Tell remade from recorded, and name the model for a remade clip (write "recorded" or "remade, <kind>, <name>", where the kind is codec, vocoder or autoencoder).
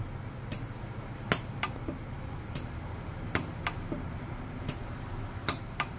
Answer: recorded